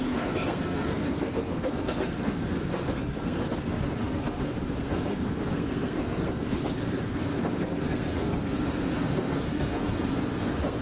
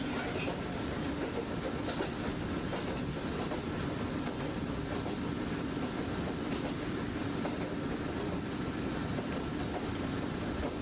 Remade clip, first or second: first